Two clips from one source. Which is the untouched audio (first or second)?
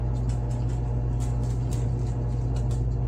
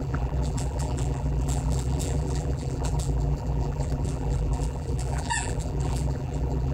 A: first